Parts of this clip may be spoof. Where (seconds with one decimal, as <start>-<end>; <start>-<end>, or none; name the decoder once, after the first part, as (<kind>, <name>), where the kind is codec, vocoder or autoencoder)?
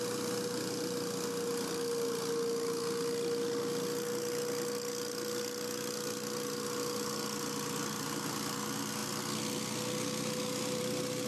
none